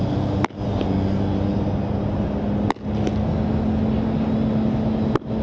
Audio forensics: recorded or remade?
recorded